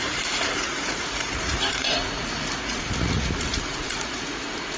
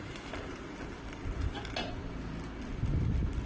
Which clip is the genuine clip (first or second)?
second